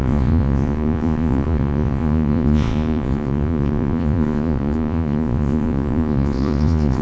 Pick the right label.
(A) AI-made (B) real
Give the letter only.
A